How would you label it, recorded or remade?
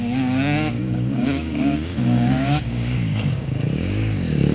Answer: remade